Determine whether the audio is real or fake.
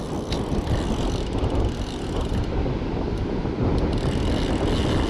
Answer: real